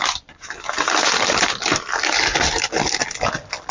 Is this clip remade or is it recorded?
recorded